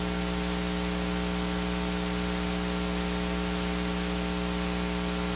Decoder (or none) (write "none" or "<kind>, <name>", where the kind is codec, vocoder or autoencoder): none